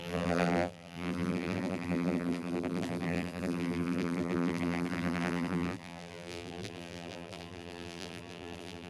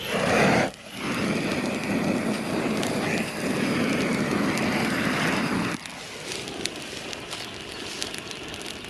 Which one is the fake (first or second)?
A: first